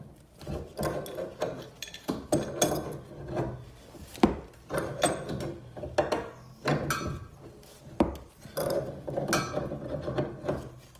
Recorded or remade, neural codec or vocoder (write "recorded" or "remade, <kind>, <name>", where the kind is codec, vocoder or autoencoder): recorded